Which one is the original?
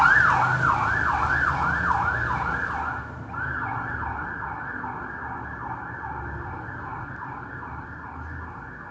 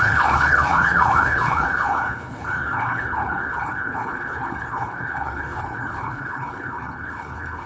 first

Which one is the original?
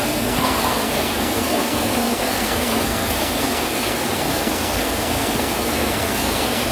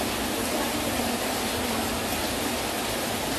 second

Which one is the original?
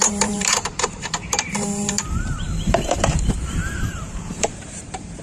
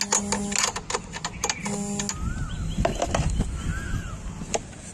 second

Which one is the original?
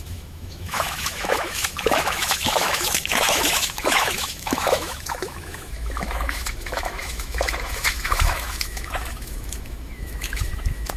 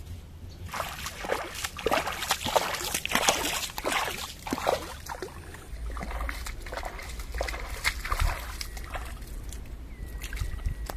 second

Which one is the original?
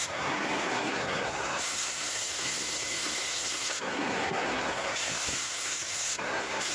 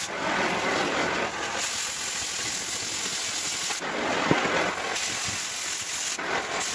second